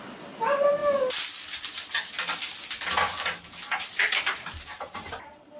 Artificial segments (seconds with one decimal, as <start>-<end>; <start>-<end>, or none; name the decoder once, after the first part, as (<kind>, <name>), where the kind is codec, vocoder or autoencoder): 0.0-0.8 (vocoder, BigVGAN v2); 4.2-5.6